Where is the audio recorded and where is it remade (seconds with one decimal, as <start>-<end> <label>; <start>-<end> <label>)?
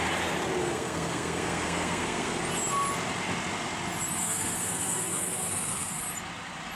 0.0-0.6 recorded; 0.6-2.4 remade; 2.4-4.2 recorded; 4.2-6.0 remade; 6.0-6.8 recorded